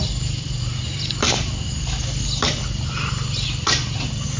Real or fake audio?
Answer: real